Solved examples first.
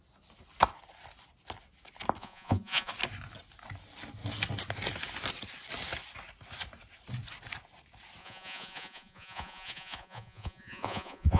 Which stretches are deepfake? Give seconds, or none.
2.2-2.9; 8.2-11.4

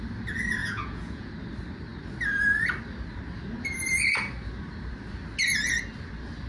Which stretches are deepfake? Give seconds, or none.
0.6-1.3

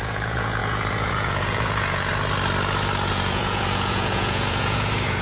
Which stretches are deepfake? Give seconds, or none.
0.0-2.1; 3.1-5.2

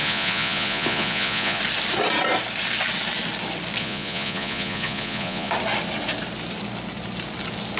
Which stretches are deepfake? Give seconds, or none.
0.0-1.6; 3.8-5.5

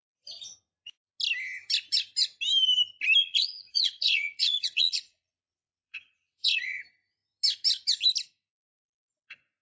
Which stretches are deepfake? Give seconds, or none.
3.2-6.8